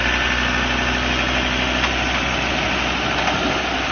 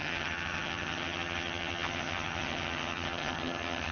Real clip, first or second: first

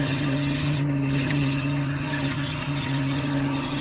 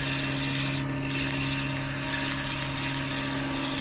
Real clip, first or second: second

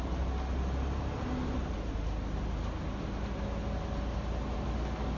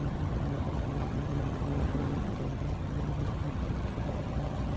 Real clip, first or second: first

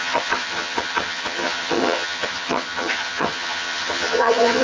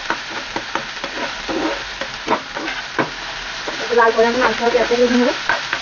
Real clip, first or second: second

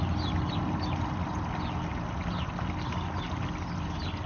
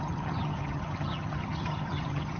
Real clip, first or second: first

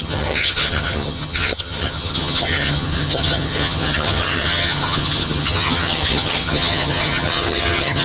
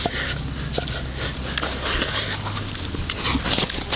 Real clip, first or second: second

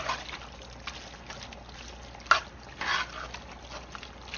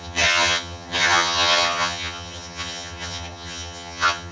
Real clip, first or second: first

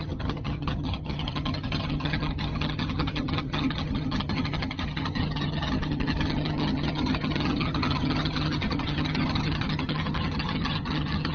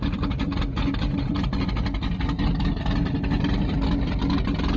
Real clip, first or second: second